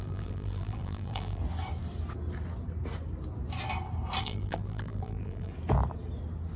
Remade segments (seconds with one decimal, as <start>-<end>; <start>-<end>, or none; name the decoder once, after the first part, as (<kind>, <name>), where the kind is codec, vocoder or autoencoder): 0.0-1.4 (vocoder, BigVGAN v2); 4.2-5.5